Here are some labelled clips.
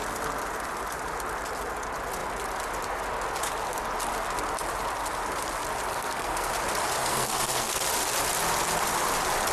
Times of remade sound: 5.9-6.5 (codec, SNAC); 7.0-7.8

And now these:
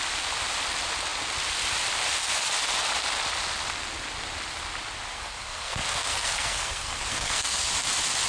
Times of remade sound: 5.1-7.7 (codec, SNAC)

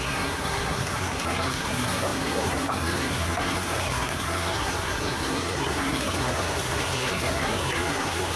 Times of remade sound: 0.0-8.4 (codec, SNAC)

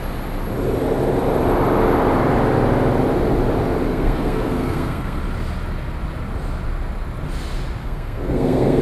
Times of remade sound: 3.9-5.2 (codec, SNAC); 7.8-8.8